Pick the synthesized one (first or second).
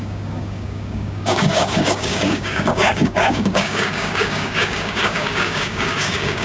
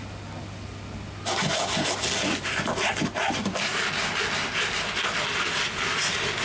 first